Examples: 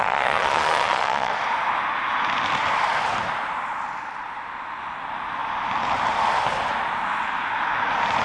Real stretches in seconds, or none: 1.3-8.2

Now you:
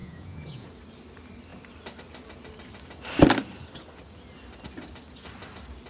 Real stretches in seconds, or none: 0.7-5.9

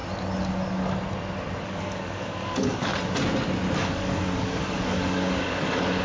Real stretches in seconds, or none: 0.0-1.6; 2.9-3.8

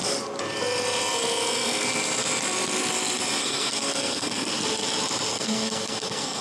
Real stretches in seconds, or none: 0.0-3.4; 4.5-5.3

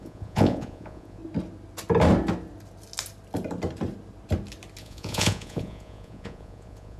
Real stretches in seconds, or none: 1.2-4.8

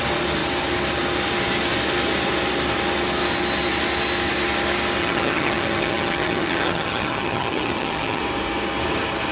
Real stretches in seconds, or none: 0.0-5.0; 8.2-9.3

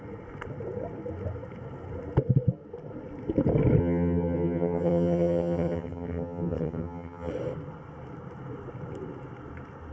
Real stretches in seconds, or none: 0.0-3.8; 7.3-9.9

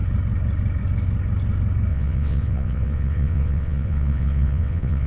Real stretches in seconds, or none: 0.0-1.9